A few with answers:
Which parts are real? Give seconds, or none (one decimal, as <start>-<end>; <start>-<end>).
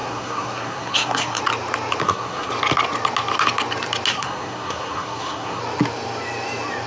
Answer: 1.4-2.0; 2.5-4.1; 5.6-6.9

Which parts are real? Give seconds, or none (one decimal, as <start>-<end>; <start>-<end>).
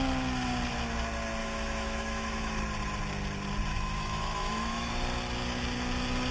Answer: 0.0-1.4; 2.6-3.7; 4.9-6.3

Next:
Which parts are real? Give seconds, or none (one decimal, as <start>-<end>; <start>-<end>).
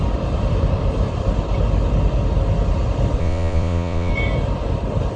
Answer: 0.0-3.2; 4.1-5.2